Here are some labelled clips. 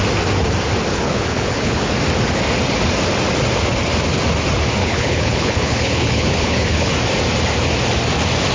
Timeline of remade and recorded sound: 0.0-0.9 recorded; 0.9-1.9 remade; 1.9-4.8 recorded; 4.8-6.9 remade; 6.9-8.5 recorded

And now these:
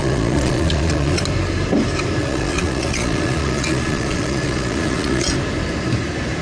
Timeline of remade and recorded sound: 0.0-1.2 remade; 1.2-2.2 recorded; 2.2-5.3 remade; 5.3-6.4 recorded

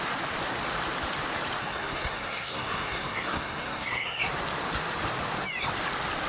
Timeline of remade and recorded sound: 0.0-1.6 recorded; 1.6-4.2 remade; 4.2-6.3 recorded

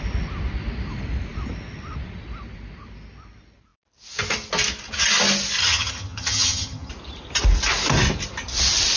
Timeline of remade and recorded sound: 0.0-5.6 recorded; 5.6-6.9 remade; 6.9-9.0 recorded

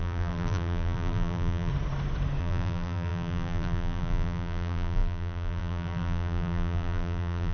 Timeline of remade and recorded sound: 0.0-1.7 remade; 1.7-2.4 recorded; 2.4-7.5 remade

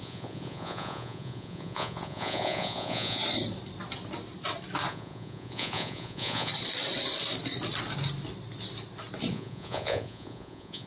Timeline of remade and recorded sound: 0.0-3.2 remade; 3.2-4.9 recorded; 4.9-6.5 remade; 6.5-9.3 recorded; 9.3-10.9 remade

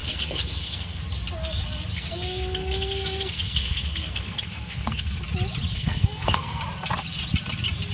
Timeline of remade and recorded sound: 0.0-1.0 remade; 1.0-1.9 recorded; 1.9-5.2 remade; 5.2-5.7 recorded; 5.7-6.6 remade; 6.6-7.9 recorded

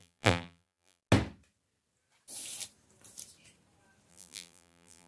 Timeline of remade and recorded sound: 0.0-1.0 remade; 1.0-4.1 recorded; 4.1-5.1 remade